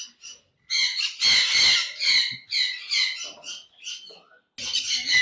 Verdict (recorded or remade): recorded